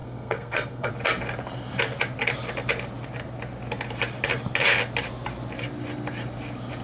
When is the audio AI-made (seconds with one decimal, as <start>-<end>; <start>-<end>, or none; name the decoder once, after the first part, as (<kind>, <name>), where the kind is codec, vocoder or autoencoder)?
0.0-0.9 (codec, SNAC)